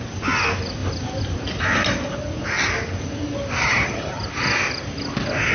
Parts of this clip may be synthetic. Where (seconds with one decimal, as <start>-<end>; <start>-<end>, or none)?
3.6-4.2